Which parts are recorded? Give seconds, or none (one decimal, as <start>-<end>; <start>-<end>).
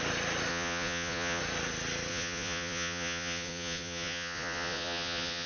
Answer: 0.0-0.5; 1.4-2.1